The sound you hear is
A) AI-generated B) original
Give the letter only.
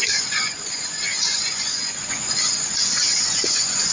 A